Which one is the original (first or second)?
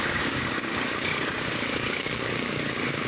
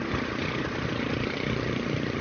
second